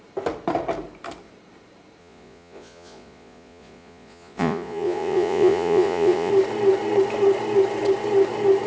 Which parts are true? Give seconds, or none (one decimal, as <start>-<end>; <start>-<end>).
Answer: 0.0-2.0; 6.3-8.7